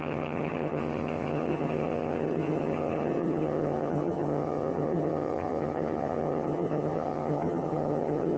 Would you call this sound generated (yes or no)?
yes